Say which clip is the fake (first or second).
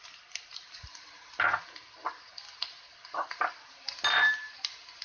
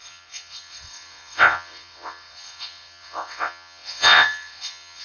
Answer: second